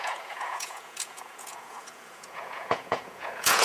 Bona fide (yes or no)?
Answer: no